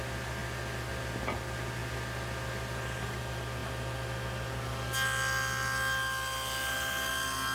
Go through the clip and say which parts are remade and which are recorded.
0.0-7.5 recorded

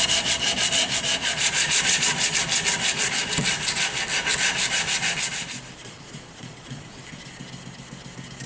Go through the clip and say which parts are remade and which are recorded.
0.0-1.2 recorded; 1.2-2.2 remade; 2.2-5.8 recorded; 5.8-7.0 remade; 7.0-8.5 recorded

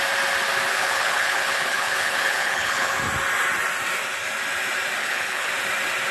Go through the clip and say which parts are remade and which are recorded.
0.0-0.7 recorded; 0.7-2.9 remade; 2.9-5.0 recorded; 5.0-5.5 remade; 5.5-6.1 recorded